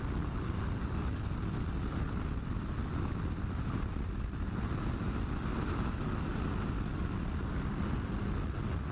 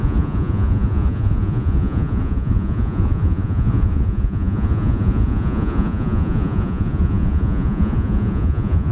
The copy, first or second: second